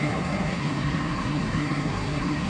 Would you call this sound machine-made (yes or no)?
yes